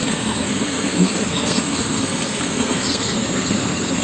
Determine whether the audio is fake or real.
fake